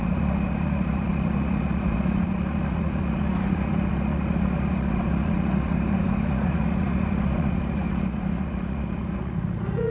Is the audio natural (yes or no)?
no